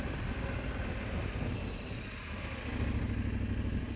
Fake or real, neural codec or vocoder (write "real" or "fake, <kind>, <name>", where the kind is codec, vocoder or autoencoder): real